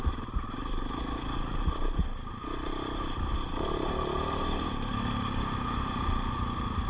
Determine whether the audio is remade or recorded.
remade